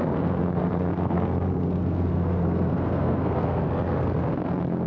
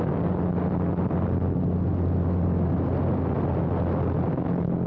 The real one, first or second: second